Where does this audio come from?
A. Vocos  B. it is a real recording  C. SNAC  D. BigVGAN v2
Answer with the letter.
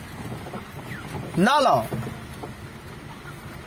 B